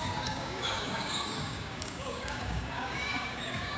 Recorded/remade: remade